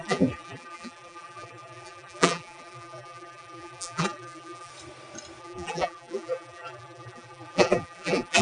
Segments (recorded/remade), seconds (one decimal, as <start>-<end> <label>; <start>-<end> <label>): 0.0-4.7 remade; 4.7-5.4 recorded; 5.4-8.4 remade